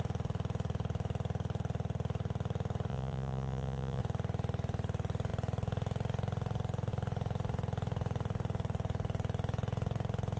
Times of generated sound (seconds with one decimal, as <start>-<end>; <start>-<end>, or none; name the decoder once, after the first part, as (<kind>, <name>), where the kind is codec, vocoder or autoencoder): 2.9-4.0 (vocoder, Vocos)